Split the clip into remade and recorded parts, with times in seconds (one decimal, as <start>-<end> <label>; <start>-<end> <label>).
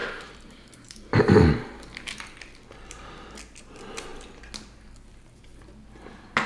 0.0-1.0 remade; 1.0-6.5 recorded